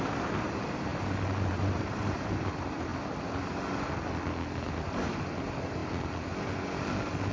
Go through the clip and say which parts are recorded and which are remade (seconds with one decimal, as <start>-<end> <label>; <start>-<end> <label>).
0.0-0.9 remade; 0.9-1.5 recorded; 1.5-2.9 remade; 2.9-4.7 recorded; 4.7-5.8 remade; 5.8-7.3 recorded